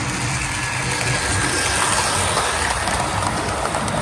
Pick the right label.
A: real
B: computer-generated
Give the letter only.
A